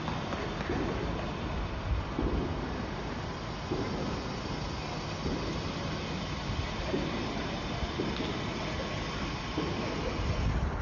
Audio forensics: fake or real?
real